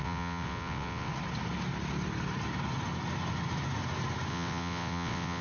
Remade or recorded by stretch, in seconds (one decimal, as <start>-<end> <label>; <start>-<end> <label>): 0.0-1.1 remade; 1.1-4.3 recorded; 4.3-5.4 remade